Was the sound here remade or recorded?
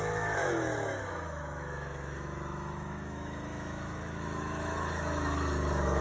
remade